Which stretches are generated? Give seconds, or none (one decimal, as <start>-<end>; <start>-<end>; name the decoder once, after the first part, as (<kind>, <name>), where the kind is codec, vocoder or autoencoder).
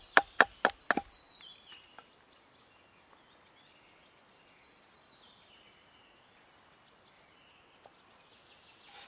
none